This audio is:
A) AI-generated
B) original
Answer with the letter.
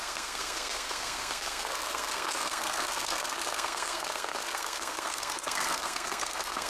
A